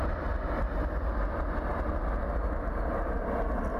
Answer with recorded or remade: recorded